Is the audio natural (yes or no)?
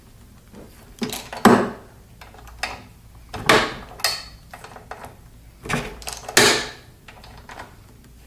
yes